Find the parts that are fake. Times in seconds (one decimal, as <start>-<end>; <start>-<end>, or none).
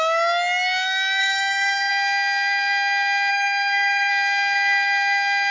1.2-1.9; 3.3-4.1